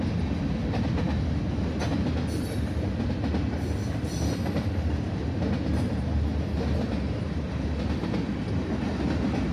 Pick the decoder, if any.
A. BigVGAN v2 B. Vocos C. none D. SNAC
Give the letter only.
C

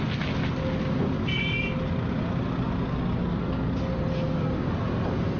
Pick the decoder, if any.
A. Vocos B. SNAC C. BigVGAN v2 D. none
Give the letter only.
D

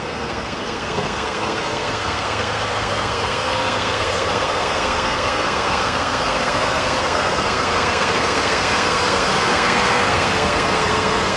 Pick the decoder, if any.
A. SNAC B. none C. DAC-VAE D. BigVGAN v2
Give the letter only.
A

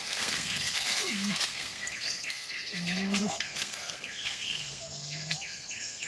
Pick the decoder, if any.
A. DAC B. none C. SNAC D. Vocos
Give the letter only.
C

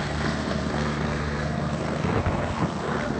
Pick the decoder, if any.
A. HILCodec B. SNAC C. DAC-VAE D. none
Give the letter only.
B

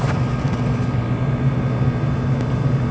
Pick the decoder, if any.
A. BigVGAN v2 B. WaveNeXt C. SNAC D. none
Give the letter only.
D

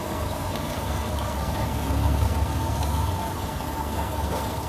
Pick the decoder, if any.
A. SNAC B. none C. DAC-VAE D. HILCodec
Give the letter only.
A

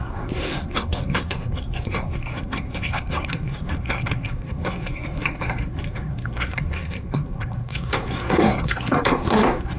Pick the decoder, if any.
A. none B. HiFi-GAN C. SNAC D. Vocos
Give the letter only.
C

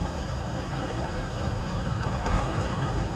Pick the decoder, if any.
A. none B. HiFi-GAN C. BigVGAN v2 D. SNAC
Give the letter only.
D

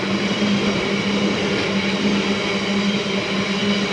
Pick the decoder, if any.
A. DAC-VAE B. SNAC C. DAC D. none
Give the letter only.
D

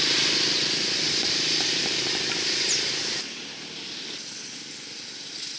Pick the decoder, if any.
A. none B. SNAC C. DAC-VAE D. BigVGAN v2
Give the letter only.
A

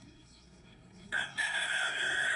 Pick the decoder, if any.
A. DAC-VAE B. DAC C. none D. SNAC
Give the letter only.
D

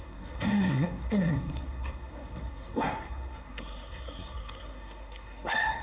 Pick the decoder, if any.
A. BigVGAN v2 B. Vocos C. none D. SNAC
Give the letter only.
D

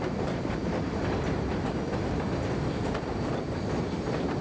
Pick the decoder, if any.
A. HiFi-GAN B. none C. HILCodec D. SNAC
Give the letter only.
B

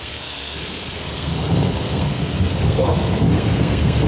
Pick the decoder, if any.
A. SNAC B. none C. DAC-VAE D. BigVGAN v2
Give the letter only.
A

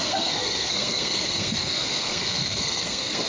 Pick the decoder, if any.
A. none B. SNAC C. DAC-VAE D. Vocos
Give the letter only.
B